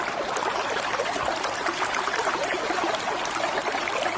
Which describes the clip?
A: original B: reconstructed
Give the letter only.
A